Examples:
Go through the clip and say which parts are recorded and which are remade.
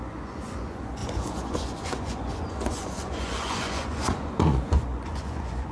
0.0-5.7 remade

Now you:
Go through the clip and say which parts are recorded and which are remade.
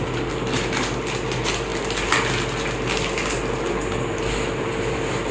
0.0-5.3 recorded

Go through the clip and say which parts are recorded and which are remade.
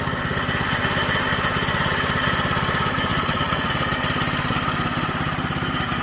0.0-3.1 recorded; 3.1-3.7 remade; 3.7-6.0 recorded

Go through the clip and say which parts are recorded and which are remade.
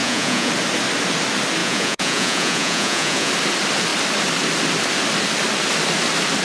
0.0-0.5 remade; 0.5-1.6 recorded; 1.6-3.3 remade; 3.3-6.4 recorded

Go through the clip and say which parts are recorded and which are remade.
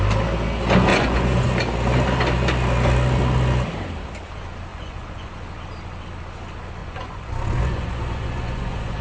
0.0-0.9 recorded; 0.9-1.5 remade; 1.5-4.7 recorded; 4.7-5.3 remade; 5.3-6.8 recorded; 6.8-9.0 remade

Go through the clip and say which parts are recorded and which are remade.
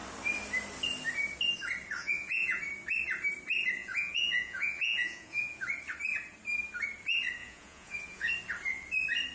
0.0-2.0 recorded; 2.0-2.6 remade; 2.6-3.8 recorded; 3.8-5.6 remade; 5.6-7.4 recorded; 7.4-8.3 remade; 8.3-9.3 recorded